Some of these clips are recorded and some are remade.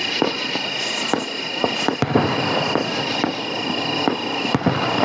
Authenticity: recorded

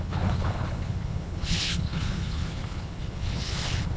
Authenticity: remade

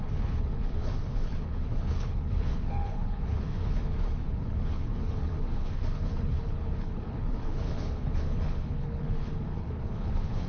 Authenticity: remade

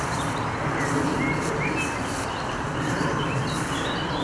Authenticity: recorded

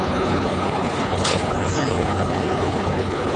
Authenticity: remade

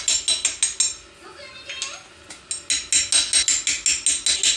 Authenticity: recorded